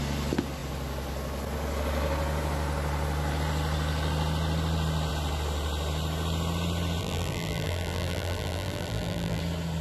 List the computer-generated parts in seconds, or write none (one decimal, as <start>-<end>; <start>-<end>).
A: 7.0-9.4